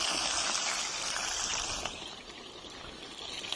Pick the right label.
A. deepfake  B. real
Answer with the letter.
B